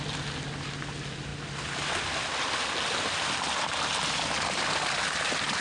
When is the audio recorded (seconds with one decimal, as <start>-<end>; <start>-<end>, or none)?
0.0-5.6